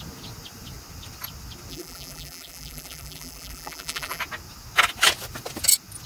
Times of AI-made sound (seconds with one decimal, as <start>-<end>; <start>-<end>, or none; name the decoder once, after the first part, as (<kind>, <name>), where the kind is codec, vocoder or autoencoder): 1.7-4.2 (vocoder, BigVGAN v2)